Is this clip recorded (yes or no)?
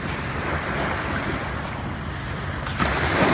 yes